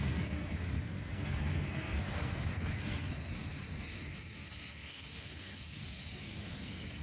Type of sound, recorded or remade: remade